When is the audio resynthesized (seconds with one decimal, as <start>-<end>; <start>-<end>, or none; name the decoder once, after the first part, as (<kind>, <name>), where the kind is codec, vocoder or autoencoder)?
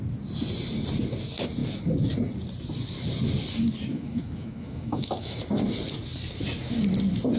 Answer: 3.9-5.4 (autoencoder, DAC-VAE)